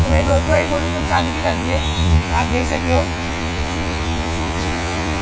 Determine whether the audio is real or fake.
fake